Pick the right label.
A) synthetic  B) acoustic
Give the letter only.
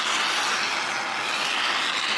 B